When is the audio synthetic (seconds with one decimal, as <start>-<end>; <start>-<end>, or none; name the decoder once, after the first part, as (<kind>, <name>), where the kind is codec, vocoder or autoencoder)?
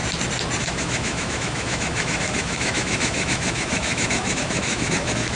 0.6-5.4 (autoencoder, DAC-VAE)